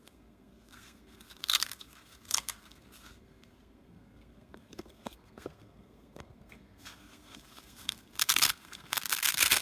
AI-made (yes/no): yes